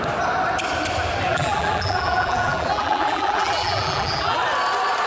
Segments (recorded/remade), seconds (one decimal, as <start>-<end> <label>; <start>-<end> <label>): 0.0-1.3 recorded; 1.3-4.4 remade; 4.4-5.1 recorded